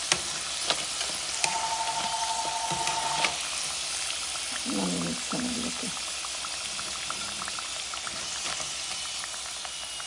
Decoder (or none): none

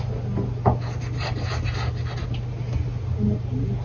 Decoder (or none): none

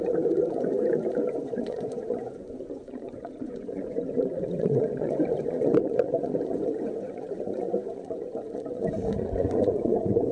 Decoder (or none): vocoder, Vocos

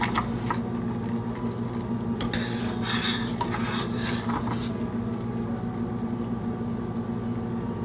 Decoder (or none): none